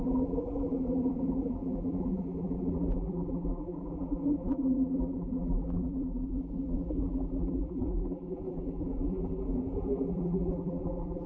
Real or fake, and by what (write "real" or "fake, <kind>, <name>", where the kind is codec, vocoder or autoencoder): fake, vocoder, BigVGAN v2